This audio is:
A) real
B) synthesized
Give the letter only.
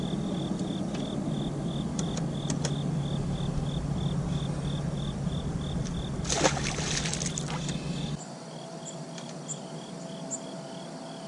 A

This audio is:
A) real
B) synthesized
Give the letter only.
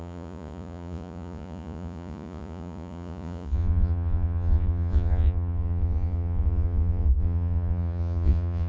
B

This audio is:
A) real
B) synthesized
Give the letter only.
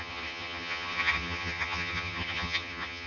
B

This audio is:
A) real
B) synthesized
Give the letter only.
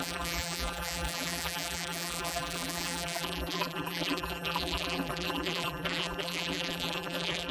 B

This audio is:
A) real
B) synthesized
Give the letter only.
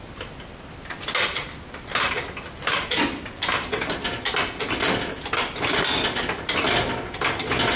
A